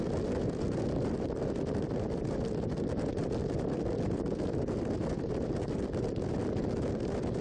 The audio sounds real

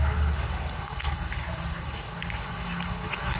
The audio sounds fake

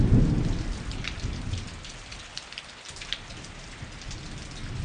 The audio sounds real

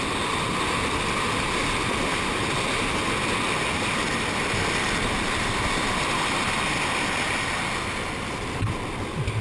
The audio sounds real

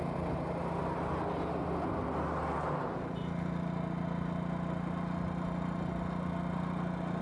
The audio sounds real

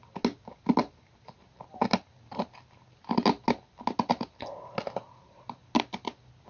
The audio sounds real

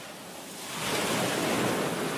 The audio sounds real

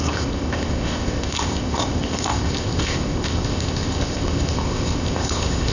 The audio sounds fake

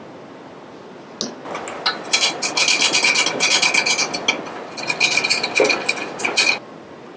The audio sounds real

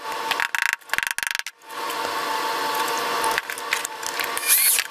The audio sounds real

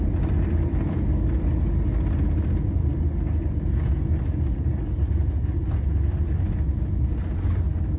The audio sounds real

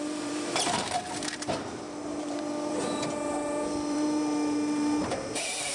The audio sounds fake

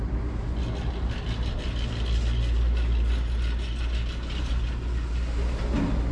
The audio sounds real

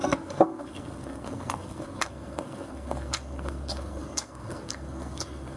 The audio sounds fake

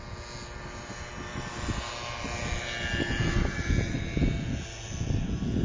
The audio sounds real